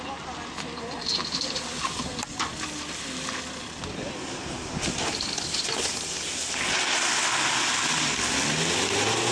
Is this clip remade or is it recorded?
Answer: recorded